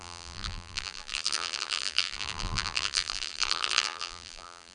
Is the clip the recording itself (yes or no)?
no